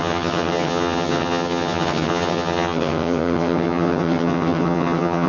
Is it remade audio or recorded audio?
remade